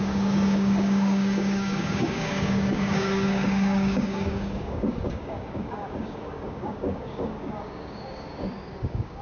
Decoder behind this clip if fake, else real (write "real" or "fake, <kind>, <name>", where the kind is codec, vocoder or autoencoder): fake, codec, DAC